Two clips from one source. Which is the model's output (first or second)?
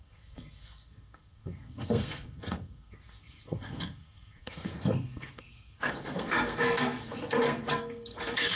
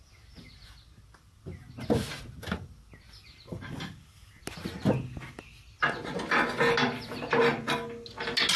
first